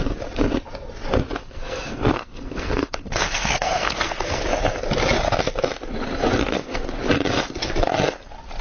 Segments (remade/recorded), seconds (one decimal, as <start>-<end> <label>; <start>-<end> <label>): 0.0-1.4 recorded; 1.4-4.4 remade; 4.4-6.4 recorded; 6.4-7.0 remade; 7.0-8.6 recorded